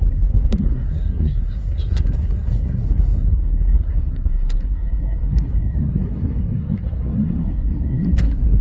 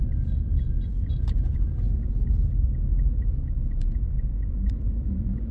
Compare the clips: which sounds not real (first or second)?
first